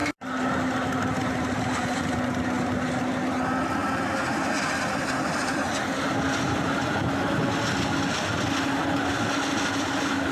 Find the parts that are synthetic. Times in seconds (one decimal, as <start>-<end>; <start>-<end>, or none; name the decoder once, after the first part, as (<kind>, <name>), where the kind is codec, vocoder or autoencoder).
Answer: none